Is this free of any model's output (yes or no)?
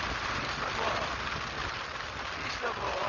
yes